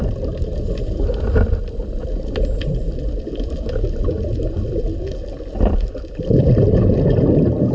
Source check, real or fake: fake